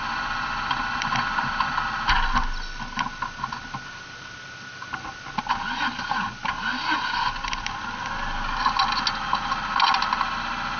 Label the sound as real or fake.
real